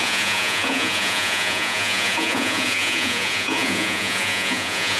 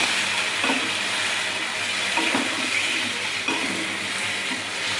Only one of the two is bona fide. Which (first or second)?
second